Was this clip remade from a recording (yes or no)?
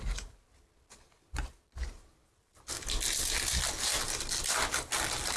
no